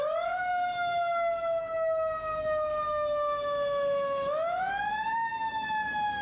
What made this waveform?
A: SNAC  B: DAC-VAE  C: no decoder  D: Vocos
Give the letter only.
B